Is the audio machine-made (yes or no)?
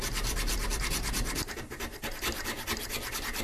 yes